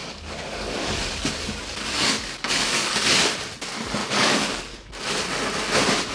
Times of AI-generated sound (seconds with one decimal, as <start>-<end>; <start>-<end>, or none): 0.0-3.3; 4.0-4.9